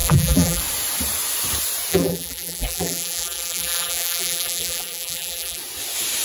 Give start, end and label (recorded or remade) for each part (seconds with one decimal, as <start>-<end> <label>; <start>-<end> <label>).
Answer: 0.0-0.6 remade; 0.6-1.9 recorded; 1.9-5.6 remade; 5.6-6.2 recorded